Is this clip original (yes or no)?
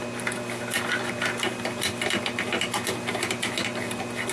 yes